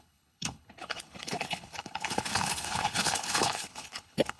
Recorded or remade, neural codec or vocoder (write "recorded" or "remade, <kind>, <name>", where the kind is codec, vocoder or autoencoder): remade, codec, HILCodec